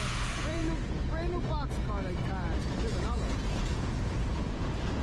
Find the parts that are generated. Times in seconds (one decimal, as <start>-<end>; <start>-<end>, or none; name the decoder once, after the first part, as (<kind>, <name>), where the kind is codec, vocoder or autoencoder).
0.0-0.6 (vocoder, Vocos); 3.0-5.0